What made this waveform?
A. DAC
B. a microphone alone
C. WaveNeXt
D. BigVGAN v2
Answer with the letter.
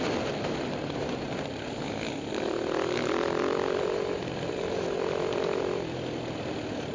B